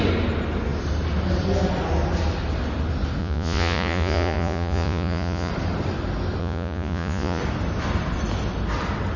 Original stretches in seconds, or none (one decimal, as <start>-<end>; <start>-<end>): 0.0-3.2; 5.5-6.4; 7.4-9.2